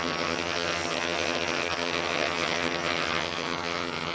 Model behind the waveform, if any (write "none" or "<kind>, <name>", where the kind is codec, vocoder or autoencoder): vocoder, HiFi-GAN